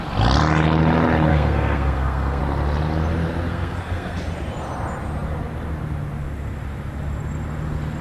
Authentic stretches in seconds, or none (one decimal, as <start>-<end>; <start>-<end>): 0.0-1.3; 2.4-3.5; 4.2-8.0